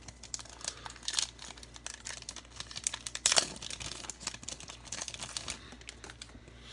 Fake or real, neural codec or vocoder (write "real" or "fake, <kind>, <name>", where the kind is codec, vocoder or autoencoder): real